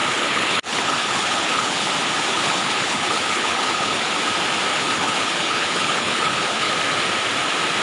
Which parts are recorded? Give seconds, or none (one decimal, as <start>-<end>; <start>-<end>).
1.9-2.3; 4.1-4.7; 6.7-7.8